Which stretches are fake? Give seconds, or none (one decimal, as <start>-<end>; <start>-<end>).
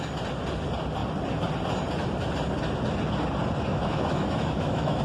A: 3.7-5.0